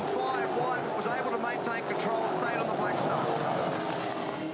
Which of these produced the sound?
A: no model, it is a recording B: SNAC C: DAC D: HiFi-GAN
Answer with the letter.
A